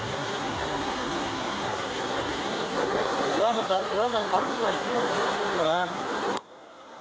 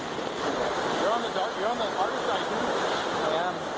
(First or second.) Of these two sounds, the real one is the second